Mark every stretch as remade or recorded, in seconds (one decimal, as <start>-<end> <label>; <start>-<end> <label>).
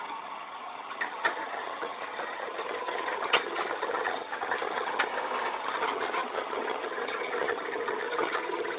0.0-5.1 remade; 5.1-5.6 recorded; 5.6-8.8 remade